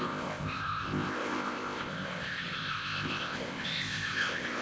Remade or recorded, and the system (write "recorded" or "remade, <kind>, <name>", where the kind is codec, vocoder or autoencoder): remade, codec, ZipCodec